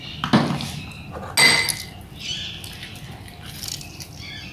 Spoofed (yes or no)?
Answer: no